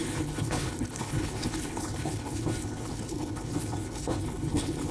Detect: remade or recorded remade